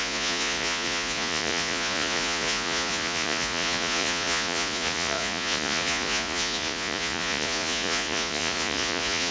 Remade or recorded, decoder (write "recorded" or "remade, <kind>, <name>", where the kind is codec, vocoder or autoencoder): remade, vocoder, Vocos